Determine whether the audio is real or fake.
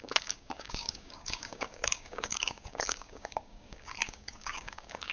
fake